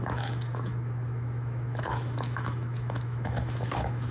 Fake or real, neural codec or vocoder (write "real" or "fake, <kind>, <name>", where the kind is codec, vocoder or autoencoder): fake, autoencoder, DAC-VAE